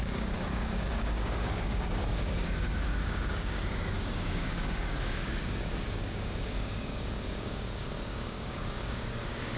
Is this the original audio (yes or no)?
no